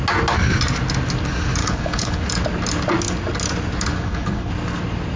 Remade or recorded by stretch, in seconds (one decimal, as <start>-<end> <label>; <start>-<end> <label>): 0.0-1.6 recorded; 1.6-2.2 remade; 2.2-3.9 recorded; 3.9-4.5 remade; 4.5-5.2 recorded